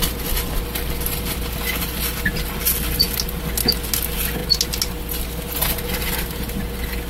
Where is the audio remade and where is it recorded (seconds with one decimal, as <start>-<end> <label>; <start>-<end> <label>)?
0.0-7.1 recorded